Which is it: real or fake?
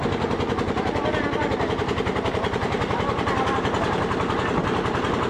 real